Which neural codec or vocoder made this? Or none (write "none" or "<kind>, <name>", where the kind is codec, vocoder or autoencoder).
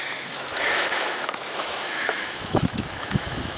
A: autoencoder, DAC-VAE